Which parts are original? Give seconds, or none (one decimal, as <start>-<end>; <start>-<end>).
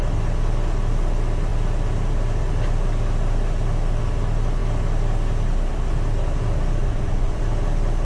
0.0-6.8; 7.4-8.0